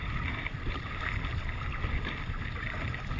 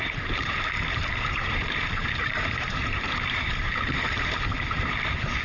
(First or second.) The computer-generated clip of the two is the second